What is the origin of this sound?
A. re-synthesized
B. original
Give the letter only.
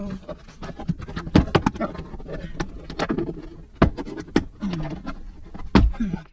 B